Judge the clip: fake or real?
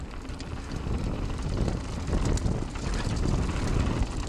real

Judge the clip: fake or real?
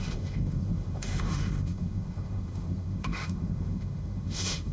fake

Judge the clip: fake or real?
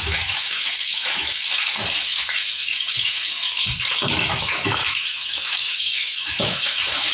fake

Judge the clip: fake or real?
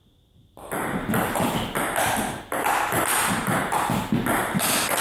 real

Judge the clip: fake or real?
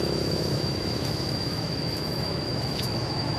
fake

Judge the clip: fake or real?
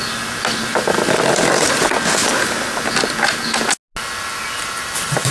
real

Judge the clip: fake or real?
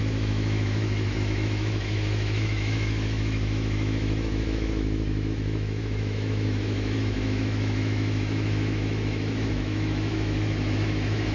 fake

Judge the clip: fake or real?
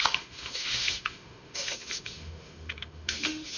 fake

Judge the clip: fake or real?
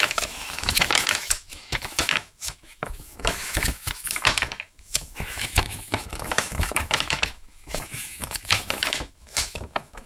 fake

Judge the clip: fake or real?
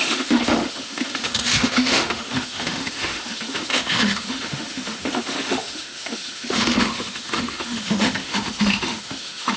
fake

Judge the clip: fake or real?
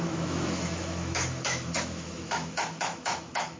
fake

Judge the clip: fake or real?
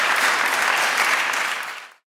real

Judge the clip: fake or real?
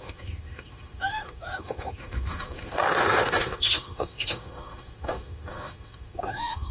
fake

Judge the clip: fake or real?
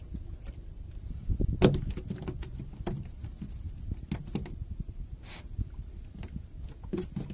real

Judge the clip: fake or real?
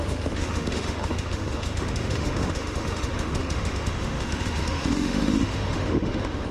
fake